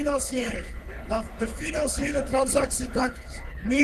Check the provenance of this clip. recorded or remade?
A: remade